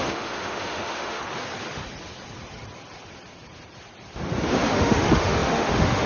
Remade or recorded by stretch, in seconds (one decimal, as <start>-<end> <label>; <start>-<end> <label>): 0.0-1.2 remade; 1.2-4.7 recorded; 4.7-6.1 remade